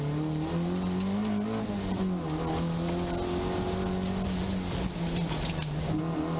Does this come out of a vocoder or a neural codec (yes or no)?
no